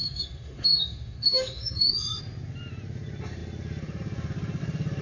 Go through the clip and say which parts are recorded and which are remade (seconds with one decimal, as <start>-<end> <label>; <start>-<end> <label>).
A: 0.0-2.2 remade; 2.2-5.0 recorded

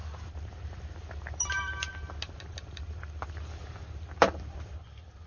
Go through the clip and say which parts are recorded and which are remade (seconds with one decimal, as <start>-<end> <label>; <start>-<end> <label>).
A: 0.0-1.9 remade; 1.9-2.6 recorded; 2.6-5.3 remade